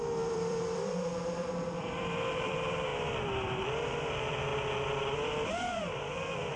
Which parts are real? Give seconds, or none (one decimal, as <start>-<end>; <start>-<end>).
2.9-3.6; 4.5-5.5